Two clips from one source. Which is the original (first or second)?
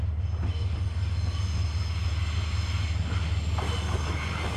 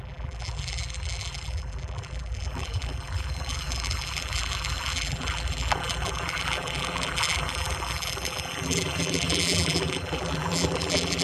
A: first